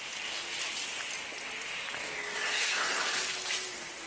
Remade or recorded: recorded